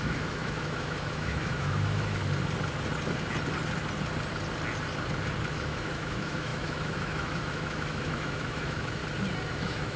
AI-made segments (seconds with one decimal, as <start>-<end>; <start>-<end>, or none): 0.0-2.2; 5.5-9.0; 9.5-10.0

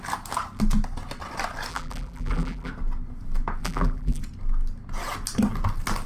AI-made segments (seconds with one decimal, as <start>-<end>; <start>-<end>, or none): 1.7-2.7; 3.6-4.2

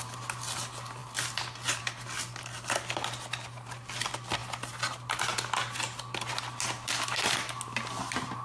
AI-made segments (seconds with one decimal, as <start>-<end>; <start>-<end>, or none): none

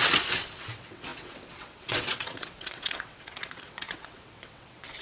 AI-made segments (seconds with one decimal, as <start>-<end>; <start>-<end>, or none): 0.0-5.0